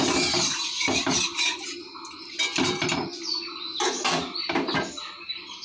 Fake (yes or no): no